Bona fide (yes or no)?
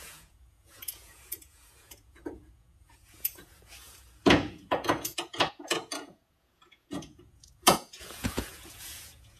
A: no